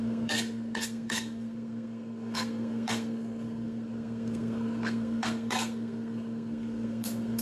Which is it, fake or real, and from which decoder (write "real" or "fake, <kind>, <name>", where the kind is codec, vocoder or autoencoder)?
fake, codec, SNAC